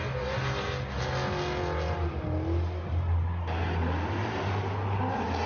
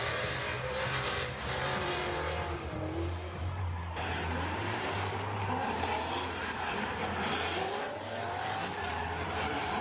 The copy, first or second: second